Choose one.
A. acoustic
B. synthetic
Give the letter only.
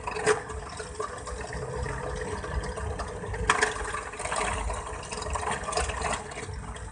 A